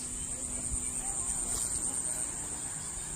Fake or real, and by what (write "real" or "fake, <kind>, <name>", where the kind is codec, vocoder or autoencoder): real